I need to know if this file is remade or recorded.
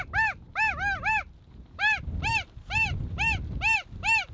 recorded